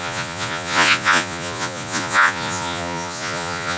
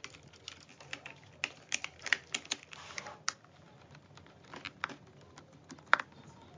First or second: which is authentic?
second